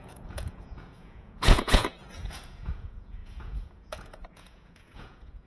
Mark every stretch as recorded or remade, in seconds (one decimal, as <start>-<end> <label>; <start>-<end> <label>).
0.0-5.5 remade